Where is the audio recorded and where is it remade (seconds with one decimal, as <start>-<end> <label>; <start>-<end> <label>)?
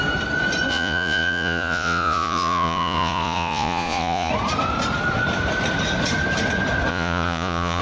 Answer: 0.0-0.7 recorded; 0.7-4.3 remade; 4.3-6.9 recorded; 6.9-7.8 remade